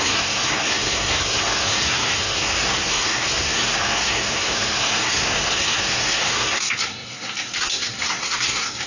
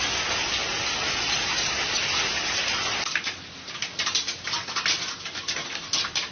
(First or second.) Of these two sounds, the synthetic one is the first